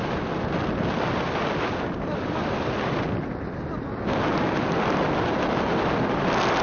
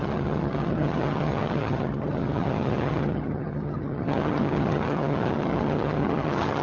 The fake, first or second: second